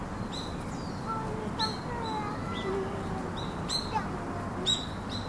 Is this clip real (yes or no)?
yes